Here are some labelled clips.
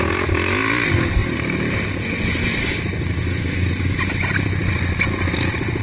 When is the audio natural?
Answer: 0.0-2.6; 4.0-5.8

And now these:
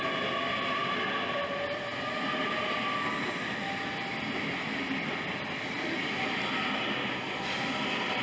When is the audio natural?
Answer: 0.0-8.2

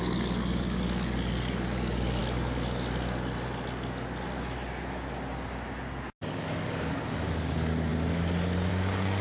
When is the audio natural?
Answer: 2.2-6.3; 7.9-8.7